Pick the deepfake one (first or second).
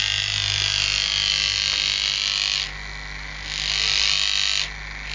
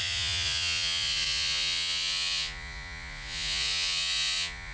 second